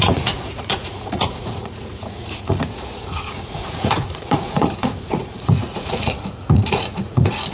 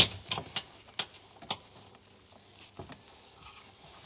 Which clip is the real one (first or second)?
second